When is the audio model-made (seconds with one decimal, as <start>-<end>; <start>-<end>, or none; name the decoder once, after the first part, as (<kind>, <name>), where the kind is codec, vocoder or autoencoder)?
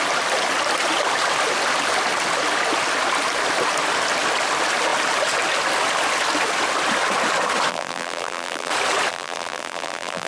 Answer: 7.7-8.7 (vocoder, BigVGAN v2); 9.1-10.3